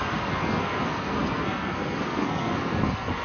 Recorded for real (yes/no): no